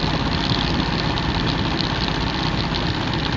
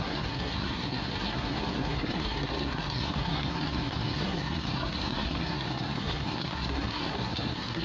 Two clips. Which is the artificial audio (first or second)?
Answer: second